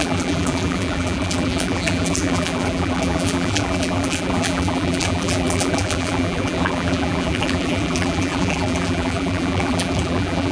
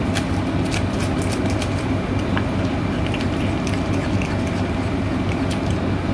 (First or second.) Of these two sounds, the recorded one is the second